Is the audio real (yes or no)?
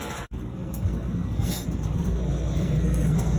no